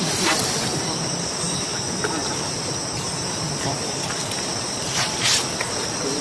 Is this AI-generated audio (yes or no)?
no